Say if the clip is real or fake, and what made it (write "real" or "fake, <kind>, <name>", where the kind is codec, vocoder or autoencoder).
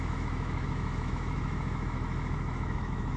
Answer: fake, autoencoder, DAC-VAE